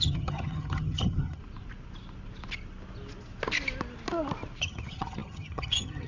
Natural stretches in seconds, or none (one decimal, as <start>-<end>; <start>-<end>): 1.4-4.6